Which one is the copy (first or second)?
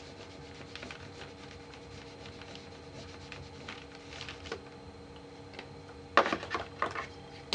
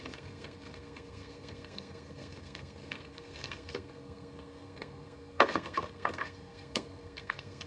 second